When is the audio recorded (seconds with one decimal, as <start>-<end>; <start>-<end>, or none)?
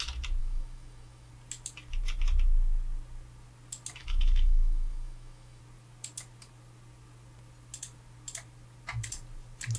0.0-0.4; 1.3-4.0; 5.6-9.8